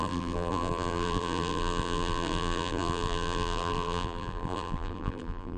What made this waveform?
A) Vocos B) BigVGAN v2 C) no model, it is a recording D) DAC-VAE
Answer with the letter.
B